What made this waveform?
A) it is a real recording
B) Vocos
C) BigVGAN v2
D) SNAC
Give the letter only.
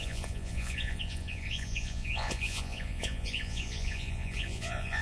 B